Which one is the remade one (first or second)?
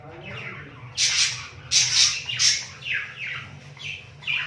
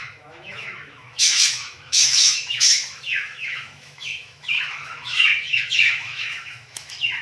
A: second